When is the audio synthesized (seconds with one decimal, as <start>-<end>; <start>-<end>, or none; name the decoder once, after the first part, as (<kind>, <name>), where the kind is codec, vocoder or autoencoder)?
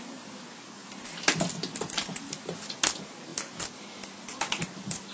none